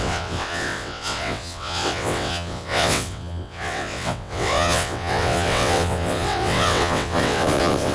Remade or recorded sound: remade